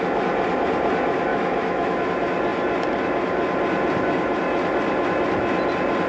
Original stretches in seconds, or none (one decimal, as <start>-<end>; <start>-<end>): 0.0-1.3; 2.0-6.1